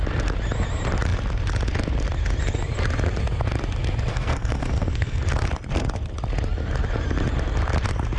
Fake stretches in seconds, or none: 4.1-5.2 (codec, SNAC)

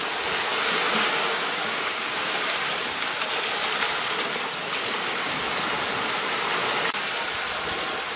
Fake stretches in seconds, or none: 0.5-3.1 (codec, DAC)